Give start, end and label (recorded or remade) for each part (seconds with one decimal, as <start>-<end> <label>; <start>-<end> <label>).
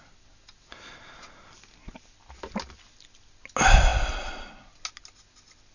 0.0-5.7 recorded